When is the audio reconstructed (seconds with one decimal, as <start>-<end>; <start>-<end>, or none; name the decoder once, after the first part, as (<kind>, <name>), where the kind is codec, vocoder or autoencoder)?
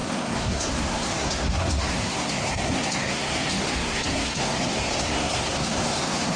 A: 0.0-6.4 (codec, SNAC)